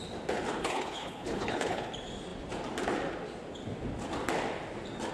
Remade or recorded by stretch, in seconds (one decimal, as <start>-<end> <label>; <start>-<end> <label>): 0.0-0.6 recorded; 0.6-1.9 remade; 1.9-5.1 recorded